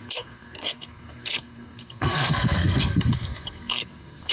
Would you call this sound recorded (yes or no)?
no